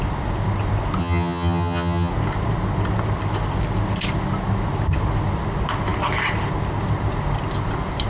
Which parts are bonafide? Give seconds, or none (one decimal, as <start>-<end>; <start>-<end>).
0.0-1.0; 2.1-8.1